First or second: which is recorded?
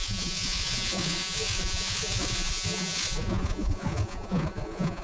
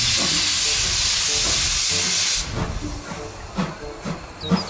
second